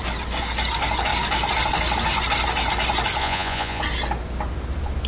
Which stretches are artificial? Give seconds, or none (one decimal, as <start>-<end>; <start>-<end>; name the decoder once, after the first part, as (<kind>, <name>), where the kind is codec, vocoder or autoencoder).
3.2-3.8 (vocoder, Vocos)